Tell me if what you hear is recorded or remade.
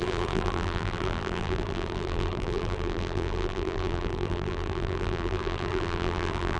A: remade